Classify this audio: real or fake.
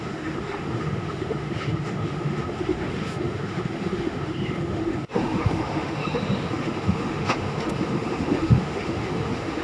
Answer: fake